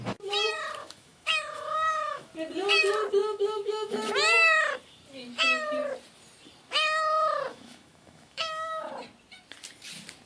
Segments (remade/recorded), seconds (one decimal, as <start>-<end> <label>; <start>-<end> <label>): 0.0-0.8 recorded; 0.8-2.3 remade; 2.3-3.2 recorded; 3.2-4.1 remade; 4.1-7.5 recorded; 7.5-8.9 remade; 8.9-10.3 recorded